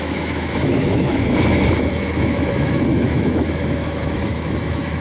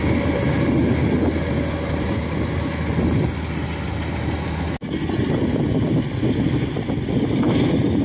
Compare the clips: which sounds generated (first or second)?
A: first